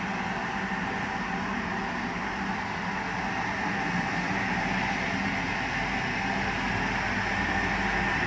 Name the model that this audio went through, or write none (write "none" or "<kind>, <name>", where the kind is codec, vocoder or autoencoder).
none